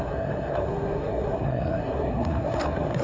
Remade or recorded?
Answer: remade